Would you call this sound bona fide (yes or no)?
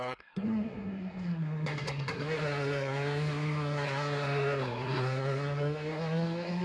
no